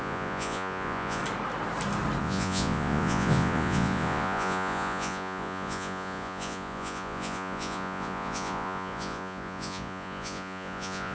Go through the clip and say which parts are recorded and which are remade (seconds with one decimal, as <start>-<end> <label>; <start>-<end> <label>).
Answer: 0.0-1.2 remade; 1.2-2.2 recorded; 2.2-11.1 remade